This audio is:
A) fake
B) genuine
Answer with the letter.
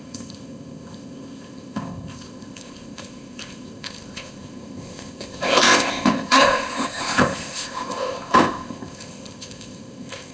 A